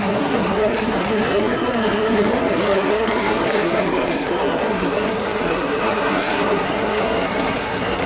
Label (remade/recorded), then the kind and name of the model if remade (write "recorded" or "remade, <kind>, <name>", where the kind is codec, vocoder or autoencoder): remade, codec, SNAC